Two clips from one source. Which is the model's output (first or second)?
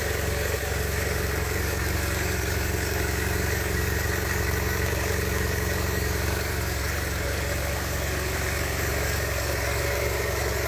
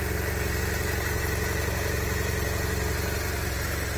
first